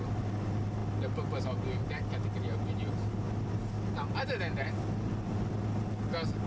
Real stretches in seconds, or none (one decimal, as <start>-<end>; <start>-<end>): 0.0-6.5